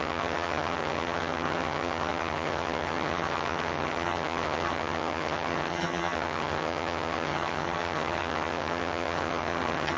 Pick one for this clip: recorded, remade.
remade